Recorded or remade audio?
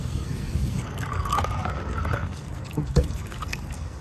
remade